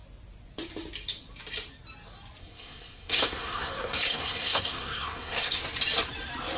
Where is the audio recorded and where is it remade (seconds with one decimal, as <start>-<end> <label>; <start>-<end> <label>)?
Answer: 0.0-2.4 recorded; 2.4-5.6 remade; 5.6-6.6 recorded